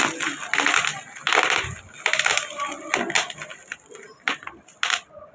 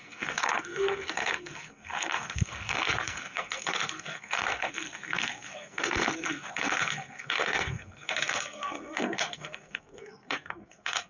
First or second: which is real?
first